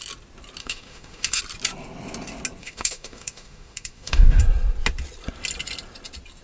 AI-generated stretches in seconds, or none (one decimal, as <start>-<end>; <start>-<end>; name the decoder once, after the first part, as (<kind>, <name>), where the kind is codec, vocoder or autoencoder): 0.6-1.4 (autoencoder, DAC-VAE); 2.6-4.4

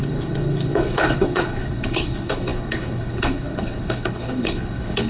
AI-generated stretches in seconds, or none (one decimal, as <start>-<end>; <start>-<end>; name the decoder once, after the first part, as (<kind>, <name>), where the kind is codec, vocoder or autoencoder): 0.0-5.1 (codec, HILCodec)

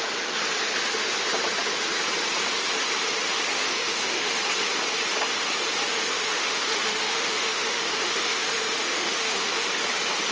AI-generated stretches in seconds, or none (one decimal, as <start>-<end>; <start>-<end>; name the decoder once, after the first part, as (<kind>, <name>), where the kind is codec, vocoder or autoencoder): 3.5-4.4 (autoencoder, DAC-VAE); 5.9-9.7

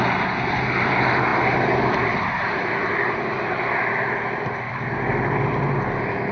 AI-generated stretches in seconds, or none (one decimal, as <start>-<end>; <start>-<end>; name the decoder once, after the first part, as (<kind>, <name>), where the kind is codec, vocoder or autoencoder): none

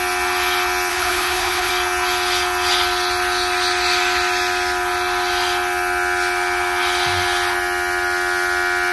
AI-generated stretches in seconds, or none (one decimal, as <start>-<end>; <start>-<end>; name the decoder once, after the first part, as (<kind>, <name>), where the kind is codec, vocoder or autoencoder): 0.9-1.7 (codec, HILCodec)

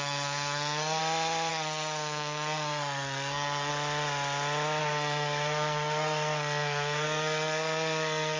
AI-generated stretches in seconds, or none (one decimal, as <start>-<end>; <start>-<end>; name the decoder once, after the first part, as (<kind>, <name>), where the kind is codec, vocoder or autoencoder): 0.0-1.0 (codec, SNAC); 1.5-3.7; 4.8-8.4

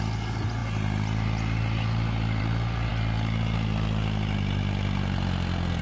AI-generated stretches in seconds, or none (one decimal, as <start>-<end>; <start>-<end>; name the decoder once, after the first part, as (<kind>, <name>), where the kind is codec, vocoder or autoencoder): none

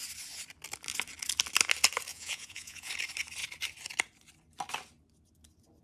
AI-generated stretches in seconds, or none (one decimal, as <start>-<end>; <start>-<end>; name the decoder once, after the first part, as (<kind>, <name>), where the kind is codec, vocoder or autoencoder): 2.1-2.9 (vocoder, Vocos)